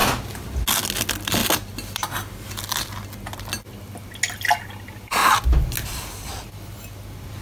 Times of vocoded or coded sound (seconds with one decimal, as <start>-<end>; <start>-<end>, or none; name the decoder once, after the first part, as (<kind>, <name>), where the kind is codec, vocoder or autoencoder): none

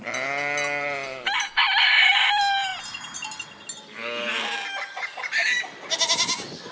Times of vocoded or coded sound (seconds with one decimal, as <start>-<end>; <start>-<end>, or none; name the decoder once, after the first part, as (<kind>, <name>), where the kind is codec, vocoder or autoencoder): none

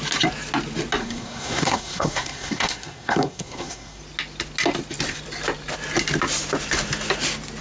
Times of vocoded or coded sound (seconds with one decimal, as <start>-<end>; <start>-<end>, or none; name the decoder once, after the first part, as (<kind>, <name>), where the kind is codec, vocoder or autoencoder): 1.0-4.0 (codec, SNAC)

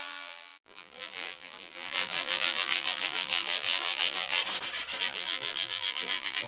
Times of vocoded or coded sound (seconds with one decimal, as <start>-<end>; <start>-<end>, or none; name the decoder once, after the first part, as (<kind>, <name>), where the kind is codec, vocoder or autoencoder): 0.0-4.4 (vocoder, BigVGAN v2); 5.0-6.5

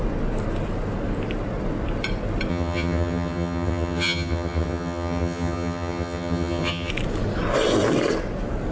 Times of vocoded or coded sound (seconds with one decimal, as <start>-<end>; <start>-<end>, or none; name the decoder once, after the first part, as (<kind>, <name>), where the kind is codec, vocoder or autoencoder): 2.5-6.9 (vocoder, HiFi-GAN)

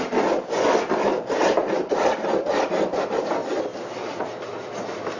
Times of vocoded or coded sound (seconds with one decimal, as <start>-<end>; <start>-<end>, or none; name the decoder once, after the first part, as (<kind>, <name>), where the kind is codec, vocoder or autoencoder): 1.1-1.7 (vocoder, BigVGAN v2)

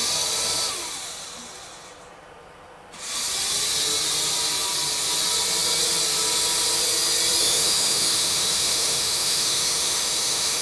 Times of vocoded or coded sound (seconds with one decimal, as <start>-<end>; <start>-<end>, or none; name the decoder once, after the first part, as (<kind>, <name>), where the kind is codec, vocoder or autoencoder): 7.4-10.6 (autoencoder, DAC-VAE)

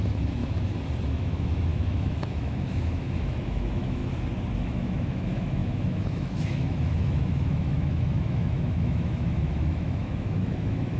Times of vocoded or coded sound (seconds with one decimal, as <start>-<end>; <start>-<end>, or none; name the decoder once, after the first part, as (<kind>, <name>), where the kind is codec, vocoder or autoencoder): 0.0-0.4 (autoencoder, DAC-VAE); 1.1-4.0; 4.6-11.0